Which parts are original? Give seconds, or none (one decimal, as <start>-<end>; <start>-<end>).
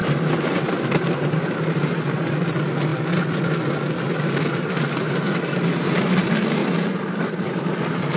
1.5-6.6